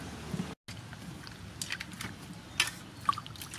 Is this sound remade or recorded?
recorded